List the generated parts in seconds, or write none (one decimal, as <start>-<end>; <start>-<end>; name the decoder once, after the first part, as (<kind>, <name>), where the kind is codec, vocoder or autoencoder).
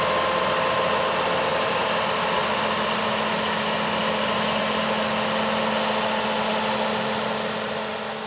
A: none